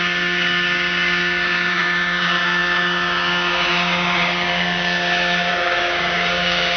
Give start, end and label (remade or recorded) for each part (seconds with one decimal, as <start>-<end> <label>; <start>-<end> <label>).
0.0-6.8 remade